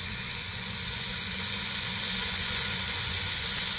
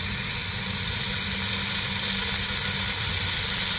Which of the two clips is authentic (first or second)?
second